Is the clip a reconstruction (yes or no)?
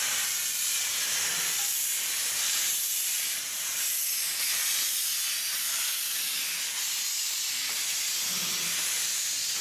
no